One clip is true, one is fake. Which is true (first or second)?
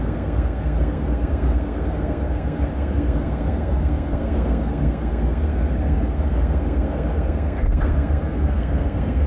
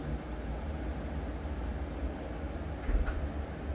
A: second